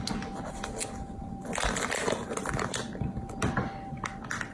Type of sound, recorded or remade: recorded